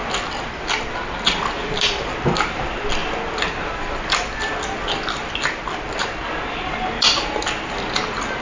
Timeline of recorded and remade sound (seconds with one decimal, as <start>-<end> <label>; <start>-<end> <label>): 0.0-8.4 recorded